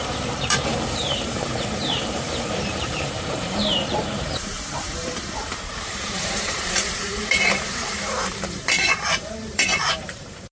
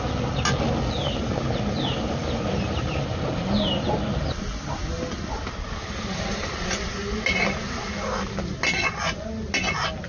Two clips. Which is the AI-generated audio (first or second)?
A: first